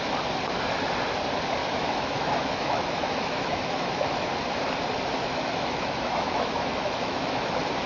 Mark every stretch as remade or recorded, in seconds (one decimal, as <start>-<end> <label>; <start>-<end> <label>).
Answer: 0.0-1.6 recorded; 1.6-4.3 remade; 4.3-5.2 recorded; 5.2-7.5 remade; 7.5-7.9 recorded